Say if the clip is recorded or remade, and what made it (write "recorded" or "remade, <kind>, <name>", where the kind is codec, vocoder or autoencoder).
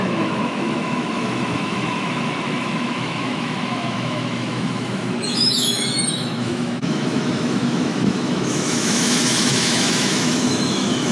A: remade, autoencoder, DAC-VAE